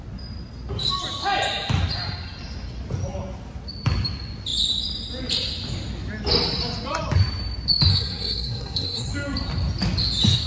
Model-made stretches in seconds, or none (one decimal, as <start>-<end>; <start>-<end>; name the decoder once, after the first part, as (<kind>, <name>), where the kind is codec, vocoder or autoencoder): 7.9-9.1 (codec, SNAC)